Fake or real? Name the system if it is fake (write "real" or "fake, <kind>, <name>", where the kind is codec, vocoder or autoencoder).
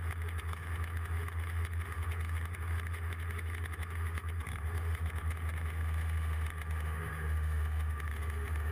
fake, autoencoder, DAC-VAE